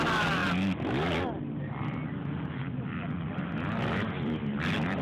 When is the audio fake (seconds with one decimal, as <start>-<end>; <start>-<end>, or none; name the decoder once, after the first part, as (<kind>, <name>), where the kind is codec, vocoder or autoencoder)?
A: none